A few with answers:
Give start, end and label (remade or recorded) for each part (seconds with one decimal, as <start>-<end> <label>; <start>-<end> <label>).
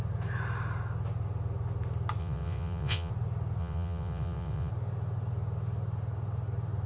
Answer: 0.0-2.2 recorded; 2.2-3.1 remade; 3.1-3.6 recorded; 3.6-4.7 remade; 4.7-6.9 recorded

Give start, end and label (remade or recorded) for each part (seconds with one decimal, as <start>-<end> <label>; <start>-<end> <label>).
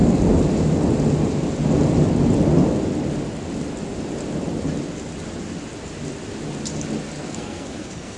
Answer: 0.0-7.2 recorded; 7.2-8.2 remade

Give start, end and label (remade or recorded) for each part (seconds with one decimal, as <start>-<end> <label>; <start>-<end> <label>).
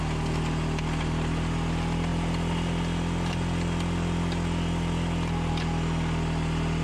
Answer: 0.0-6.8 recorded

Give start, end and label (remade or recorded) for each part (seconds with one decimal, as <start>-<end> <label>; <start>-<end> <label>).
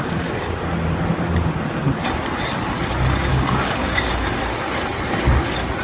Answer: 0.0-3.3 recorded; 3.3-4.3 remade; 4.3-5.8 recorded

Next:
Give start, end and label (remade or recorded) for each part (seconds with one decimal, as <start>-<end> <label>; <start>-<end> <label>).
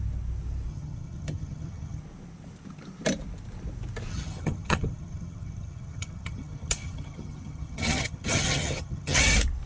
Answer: 0.0-0.7 recorded; 0.7-2.0 remade; 2.0-4.1 recorded; 4.1-9.2 remade; 9.2-9.7 recorded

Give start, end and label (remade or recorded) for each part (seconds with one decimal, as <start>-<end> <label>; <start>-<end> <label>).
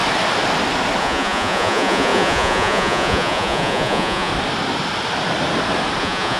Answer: 0.0-1.0 recorded; 1.0-4.3 remade; 4.3-6.0 recorded; 6.0-6.4 remade